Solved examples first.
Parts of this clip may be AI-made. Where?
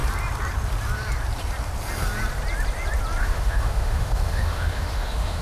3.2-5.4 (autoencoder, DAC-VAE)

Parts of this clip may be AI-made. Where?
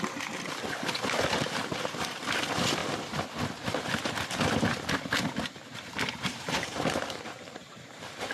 5.7-8.3 (vocoder, BigVGAN v2)